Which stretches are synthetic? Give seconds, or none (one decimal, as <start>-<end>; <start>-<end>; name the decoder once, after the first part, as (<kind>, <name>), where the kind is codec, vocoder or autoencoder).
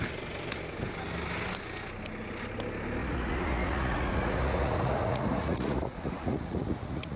3.0-7.2 (vocoder, Vocos)